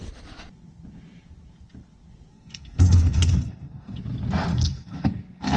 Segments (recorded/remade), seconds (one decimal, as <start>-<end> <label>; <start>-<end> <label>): 0.0-2.3 recorded; 2.3-4.0 remade; 4.0-4.5 recorded; 4.5-5.6 remade